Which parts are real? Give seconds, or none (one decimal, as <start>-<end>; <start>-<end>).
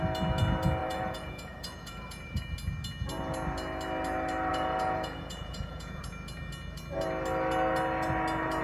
0.0-0.8; 2.4-4.5; 6.0-8.6